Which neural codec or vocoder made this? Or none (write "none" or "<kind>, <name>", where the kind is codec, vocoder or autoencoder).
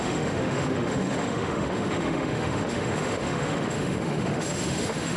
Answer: autoencoder, DAC-VAE